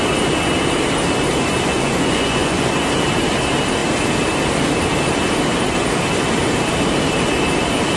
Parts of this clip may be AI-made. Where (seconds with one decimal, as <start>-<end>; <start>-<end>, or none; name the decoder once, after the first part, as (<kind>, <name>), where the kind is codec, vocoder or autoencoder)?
1.7-2.7 (vocoder, Vocos)